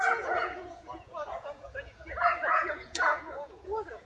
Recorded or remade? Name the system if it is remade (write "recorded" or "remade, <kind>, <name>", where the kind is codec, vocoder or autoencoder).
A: remade, vocoder, Vocos